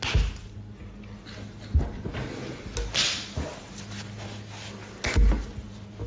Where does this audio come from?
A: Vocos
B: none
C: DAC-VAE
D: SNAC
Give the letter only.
B